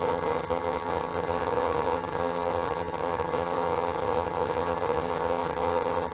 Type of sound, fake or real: fake